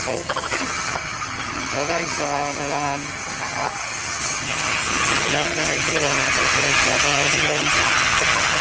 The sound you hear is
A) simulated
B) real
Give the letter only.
A